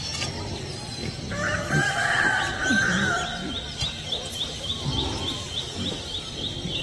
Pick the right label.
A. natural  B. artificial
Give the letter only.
A